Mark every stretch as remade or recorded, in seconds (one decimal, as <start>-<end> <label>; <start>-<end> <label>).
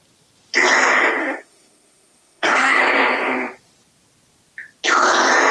0.0-1.2 recorded; 1.2-2.8 remade; 2.8-5.5 recorded